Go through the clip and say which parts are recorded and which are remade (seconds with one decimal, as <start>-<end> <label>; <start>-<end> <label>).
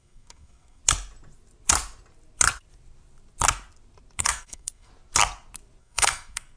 0.0-0.8 remade; 0.8-4.2 recorded; 4.2-4.9 remade; 4.9-5.8 recorded; 5.8-6.6 remade